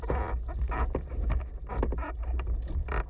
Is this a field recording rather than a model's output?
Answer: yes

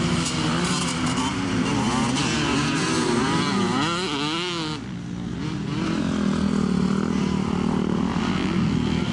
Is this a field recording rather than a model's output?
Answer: yes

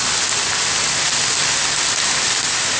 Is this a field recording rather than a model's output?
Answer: yes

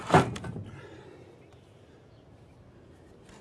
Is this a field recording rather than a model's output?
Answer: yes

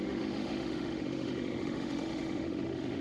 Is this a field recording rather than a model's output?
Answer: no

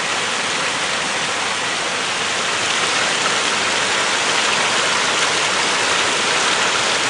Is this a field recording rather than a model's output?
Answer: yes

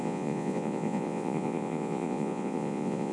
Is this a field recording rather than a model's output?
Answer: no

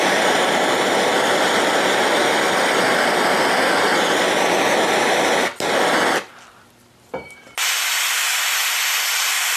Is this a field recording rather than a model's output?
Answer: yes